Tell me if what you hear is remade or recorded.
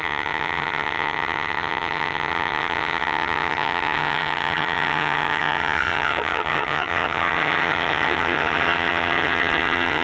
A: remade